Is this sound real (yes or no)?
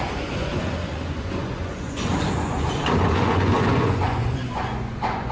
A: no